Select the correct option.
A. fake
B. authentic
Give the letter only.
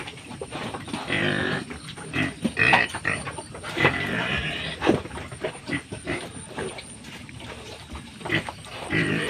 A